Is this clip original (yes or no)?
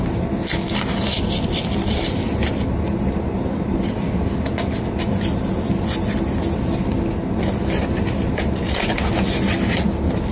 yes